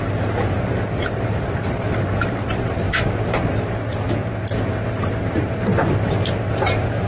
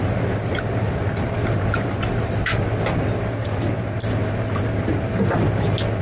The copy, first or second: first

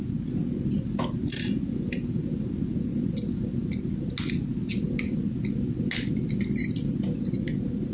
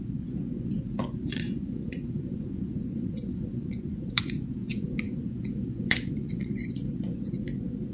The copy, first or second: second